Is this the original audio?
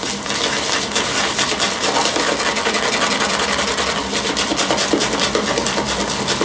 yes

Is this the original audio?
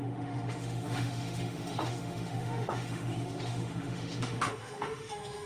no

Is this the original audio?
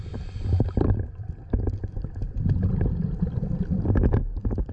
yes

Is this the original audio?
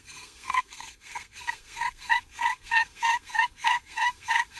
no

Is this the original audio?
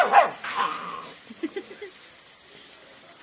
yes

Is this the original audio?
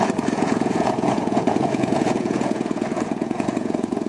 no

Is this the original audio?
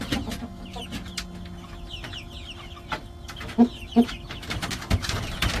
yes